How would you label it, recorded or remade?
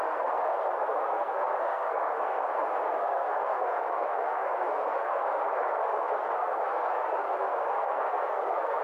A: remade